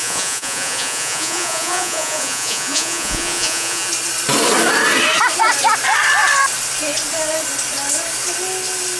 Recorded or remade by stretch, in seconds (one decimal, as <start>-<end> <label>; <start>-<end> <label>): 0.0-3.9 remade; 3.9-9.0 recorded